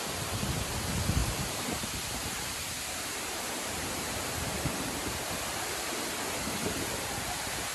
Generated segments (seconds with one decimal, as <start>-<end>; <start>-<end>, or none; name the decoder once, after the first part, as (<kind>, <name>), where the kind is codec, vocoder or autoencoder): 1.2-5.3 (vocoder, BigVGAN v2); 6.6-7.2